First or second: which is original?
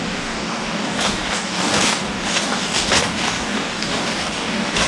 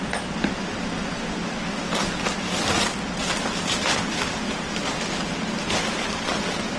second